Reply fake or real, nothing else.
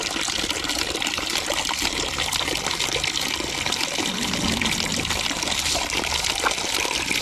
real